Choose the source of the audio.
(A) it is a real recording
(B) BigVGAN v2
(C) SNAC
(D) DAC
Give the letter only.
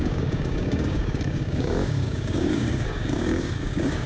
D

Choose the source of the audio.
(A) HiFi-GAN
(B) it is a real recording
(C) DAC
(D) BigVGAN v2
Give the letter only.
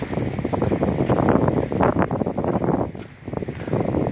B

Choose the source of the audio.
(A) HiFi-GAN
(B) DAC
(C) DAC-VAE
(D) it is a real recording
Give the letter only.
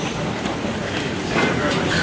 D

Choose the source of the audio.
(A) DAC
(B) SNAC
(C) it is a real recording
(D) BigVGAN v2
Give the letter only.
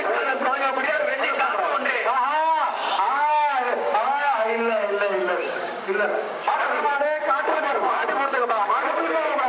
A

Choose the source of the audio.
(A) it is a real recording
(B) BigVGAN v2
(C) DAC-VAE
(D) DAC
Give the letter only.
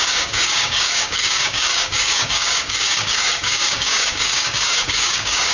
D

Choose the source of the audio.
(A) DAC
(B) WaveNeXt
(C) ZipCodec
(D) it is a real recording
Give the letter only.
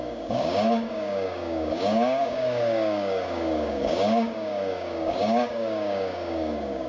A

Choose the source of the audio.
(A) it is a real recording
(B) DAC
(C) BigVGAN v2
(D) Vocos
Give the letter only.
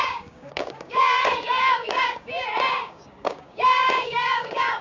B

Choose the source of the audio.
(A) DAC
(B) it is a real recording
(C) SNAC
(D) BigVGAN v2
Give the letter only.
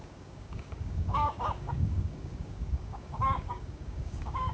A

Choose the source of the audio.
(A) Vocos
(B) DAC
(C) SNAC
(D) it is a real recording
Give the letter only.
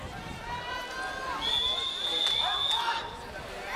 D